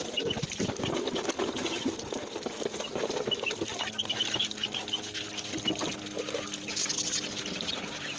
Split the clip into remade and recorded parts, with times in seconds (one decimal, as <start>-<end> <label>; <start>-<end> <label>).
0.0-8.2 recorded